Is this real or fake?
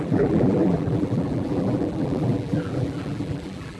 fake